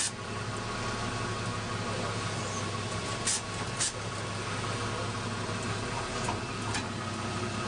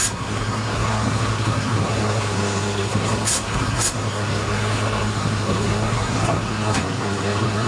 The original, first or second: first